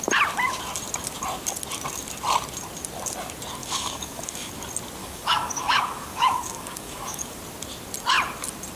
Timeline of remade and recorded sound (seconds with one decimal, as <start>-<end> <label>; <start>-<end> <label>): 0.0-3.6 recorded; 3.6-4.5 remade; 4.5-5.0 recorded; 5.0-7.4 remade; 7.4-8.8 recorded